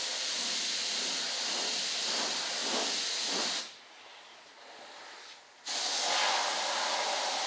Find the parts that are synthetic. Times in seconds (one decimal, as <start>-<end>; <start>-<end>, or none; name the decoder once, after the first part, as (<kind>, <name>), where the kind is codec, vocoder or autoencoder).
none